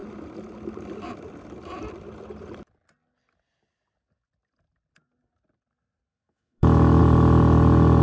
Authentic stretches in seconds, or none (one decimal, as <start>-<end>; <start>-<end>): 0.0-6.1; 7.0-8.0